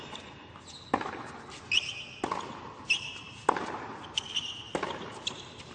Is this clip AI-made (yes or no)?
no